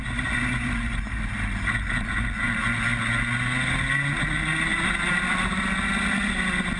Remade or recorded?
recorded